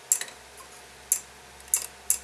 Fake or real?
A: real